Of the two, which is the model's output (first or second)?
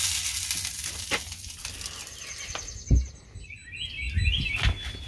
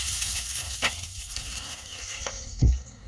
second